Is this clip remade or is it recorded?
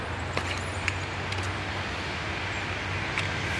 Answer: recorded